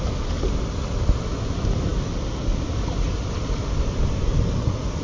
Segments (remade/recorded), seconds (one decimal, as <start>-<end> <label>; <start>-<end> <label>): 0.0-5.0 recorded